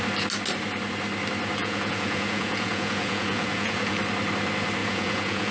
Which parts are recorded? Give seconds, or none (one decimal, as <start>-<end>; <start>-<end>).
0.0-1.6; 4.0-4.8